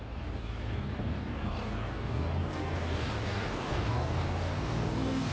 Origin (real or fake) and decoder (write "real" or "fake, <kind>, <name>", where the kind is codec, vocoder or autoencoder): fake, codec, DAC